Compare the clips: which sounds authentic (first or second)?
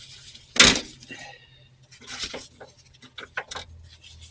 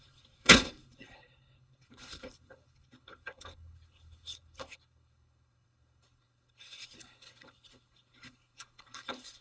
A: first